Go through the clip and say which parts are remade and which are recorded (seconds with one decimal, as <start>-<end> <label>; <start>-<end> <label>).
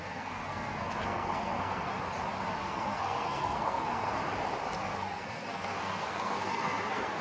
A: 0.0-1.9 remade; 1.9-2.5 recorded; 2.5-4.2 remade; 4.2-4.8 recorded; 4.8-7.2 remade